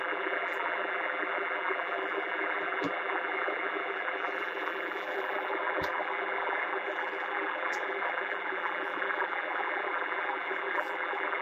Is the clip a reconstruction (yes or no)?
yes